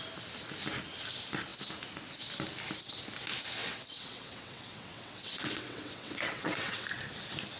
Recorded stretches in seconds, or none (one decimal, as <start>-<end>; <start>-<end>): 0.0-3.6; 7.0-7.6